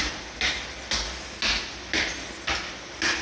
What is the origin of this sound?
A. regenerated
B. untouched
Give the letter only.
B